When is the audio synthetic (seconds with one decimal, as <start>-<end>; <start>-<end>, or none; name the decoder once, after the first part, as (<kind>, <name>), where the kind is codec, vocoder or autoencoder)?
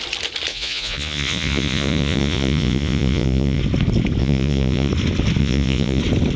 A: 0.5-3.6 (vocoder, Vocos); 4.2-4.9; 5.4-6.0